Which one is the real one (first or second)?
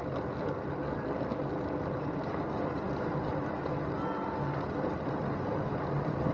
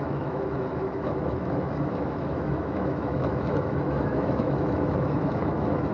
first